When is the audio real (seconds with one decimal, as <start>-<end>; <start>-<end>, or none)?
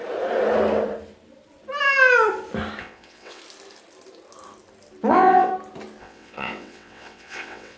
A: 0.0-2.8; 3.4-5.1; 5.5-6.0